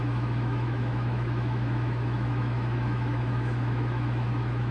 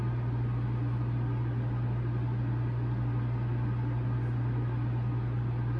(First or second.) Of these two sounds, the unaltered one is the second